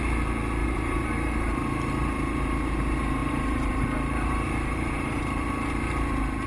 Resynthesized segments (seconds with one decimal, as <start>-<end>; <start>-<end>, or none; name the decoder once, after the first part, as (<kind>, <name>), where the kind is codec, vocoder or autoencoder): 0.6-2.1 (vocoder, BigVGAN v2); 3.2-5.5